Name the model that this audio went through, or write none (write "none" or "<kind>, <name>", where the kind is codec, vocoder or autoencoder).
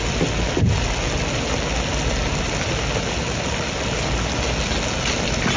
none